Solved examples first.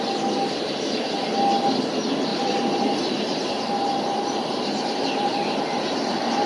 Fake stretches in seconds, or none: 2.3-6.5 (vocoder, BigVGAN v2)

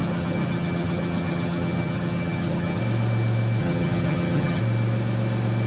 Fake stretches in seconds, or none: 0.0-2.8 (vocoder, HiFi-GAN); 3.6-4.6

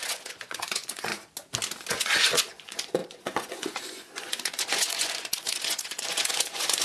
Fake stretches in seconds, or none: 0.0-1.1 (vocoder, Vocos); 1.9-6.8

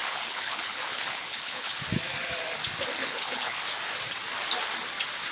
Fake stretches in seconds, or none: 0.0-1.7 (codec, HILCodec); 3.0-3.6